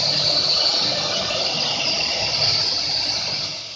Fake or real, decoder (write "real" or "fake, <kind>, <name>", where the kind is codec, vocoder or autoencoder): real